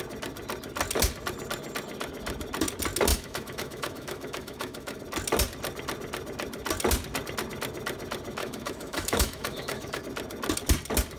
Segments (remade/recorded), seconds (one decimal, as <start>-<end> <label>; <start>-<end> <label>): 0.0-3.1 recorded; 3.1-5.0 remade; 5.0-8.4 recorded; 8.4-10.0 remade; 10.0-11.2 recorded